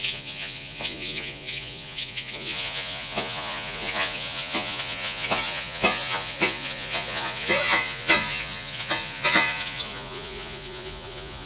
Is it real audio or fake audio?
fake